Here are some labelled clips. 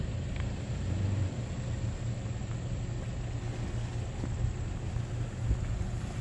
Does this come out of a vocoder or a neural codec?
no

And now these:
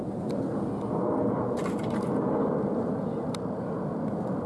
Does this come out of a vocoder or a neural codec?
no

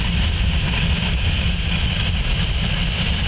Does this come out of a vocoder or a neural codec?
no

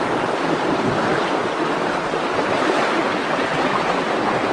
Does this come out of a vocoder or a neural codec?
no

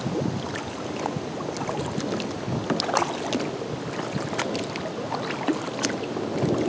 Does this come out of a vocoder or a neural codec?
no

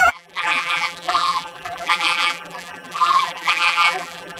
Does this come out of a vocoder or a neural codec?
yes